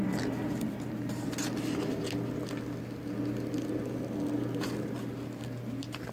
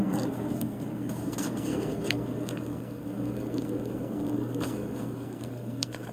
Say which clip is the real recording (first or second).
first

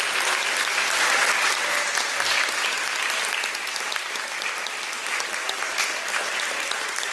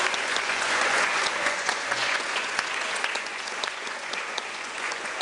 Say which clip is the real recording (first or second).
first